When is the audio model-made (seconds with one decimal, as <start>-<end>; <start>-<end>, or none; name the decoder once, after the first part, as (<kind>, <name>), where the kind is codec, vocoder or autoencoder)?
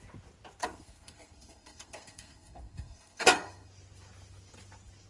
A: 0.6-3.7 (codec, SNAC)